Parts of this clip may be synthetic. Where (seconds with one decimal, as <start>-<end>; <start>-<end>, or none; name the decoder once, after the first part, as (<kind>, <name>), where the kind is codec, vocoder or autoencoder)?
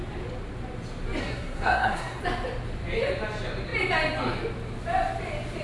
1.2-2.2 (codec, SNAC)